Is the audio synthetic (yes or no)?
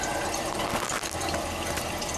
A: no